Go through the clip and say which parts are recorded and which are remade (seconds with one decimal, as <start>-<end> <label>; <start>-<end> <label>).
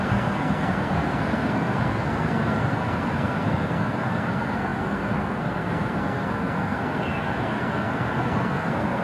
0.0-9.0 remade